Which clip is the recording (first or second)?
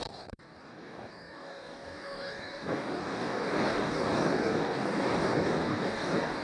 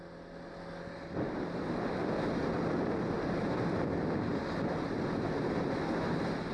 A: second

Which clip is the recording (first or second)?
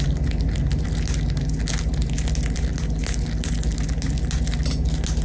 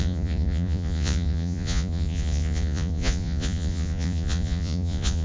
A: first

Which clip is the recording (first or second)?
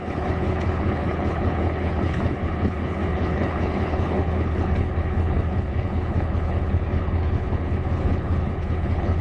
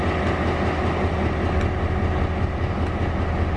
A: second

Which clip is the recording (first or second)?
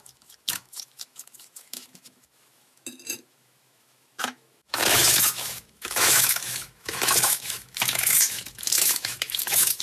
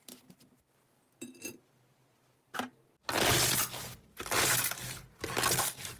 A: second